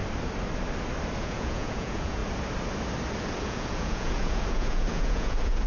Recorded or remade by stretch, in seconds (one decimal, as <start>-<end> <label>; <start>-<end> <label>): 0.0-1.2 recorded; 1.2-2.2 remade; 2.2-3.4 recorded; 3.4-5.7 remade